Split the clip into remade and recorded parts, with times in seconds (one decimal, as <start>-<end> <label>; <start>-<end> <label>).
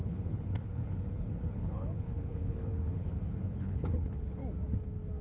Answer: 0.0-4.4 remade; 4.4-5.2 recorded